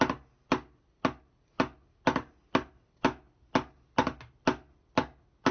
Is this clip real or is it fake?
real